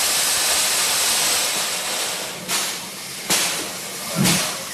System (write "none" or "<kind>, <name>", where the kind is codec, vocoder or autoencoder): none